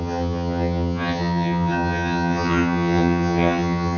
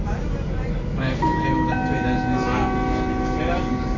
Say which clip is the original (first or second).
second